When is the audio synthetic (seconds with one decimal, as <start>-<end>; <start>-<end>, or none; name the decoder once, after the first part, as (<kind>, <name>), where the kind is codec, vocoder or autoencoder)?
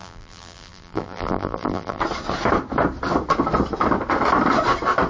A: 0.0-2.0 (vocoder, BigVGAN v2)